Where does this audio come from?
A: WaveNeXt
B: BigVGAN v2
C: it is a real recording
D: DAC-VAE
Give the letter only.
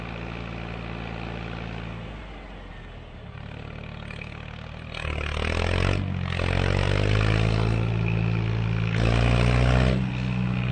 C